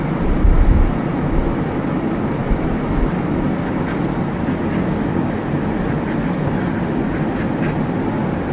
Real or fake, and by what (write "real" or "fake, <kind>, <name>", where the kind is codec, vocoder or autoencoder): real